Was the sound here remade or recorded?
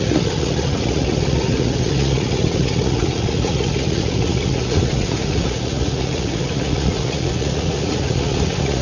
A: remade